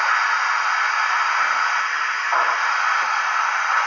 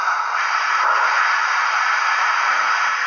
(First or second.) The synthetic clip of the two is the second